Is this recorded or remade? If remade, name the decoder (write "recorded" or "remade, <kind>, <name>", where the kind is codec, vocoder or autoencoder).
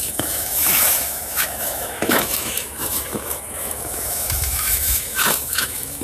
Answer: remade, autoencoder, DAC-VAE